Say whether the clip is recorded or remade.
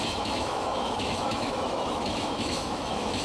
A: remade